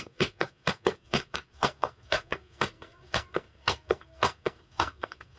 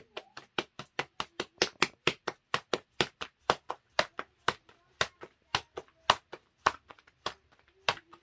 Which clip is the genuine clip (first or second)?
second